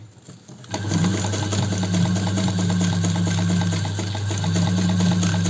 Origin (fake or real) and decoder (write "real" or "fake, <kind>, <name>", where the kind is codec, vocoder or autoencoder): real